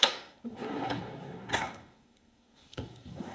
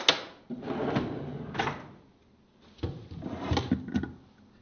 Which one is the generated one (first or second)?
first